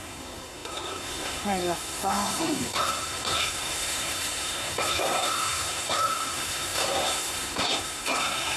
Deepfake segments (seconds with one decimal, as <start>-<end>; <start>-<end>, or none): 0.0-8.6